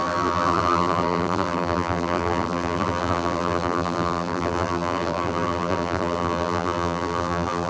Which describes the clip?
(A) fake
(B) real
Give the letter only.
A